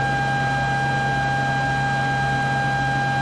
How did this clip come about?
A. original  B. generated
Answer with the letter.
A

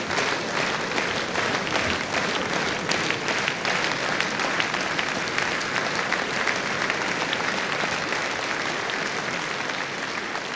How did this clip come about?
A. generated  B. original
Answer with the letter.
B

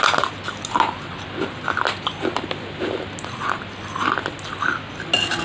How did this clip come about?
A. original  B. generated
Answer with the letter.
A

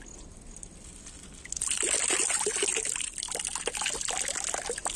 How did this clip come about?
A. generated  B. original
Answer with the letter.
B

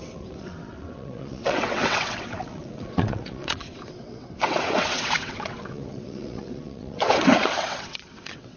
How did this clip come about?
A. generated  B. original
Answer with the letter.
A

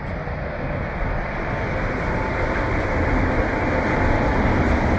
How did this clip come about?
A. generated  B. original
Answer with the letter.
B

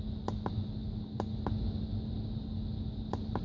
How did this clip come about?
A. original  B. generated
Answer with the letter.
A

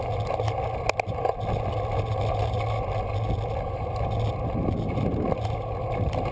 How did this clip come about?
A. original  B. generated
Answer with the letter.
A